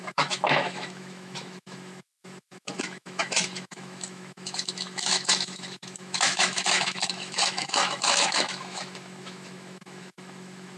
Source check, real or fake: fake